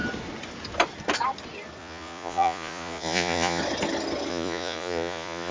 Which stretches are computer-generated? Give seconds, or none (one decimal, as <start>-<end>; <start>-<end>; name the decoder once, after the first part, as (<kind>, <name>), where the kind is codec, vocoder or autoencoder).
1.8-3.6 (vocoder, Vocos); 4.3-5.5